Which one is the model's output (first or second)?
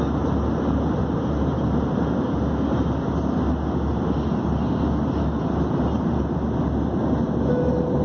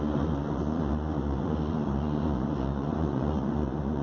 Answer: second